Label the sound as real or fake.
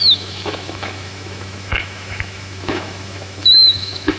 fake